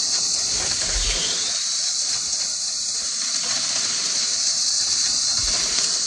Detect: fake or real fake